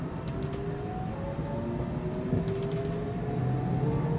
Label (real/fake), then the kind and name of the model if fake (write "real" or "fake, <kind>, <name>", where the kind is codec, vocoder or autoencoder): real